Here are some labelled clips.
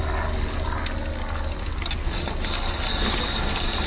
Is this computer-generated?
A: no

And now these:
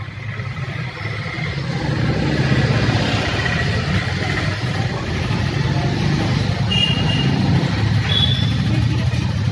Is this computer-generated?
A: no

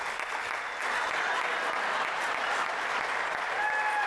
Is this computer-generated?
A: no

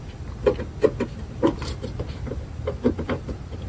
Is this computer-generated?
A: no